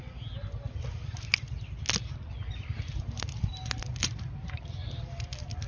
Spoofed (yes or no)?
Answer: no